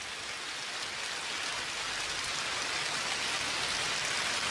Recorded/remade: recorded